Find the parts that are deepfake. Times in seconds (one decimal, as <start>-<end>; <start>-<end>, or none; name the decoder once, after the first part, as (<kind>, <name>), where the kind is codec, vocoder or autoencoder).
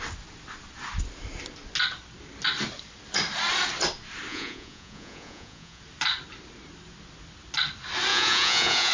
4.3-5.8 (vocoder, Vocos); 8.1-8.9